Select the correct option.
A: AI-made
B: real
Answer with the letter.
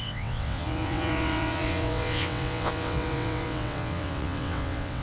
A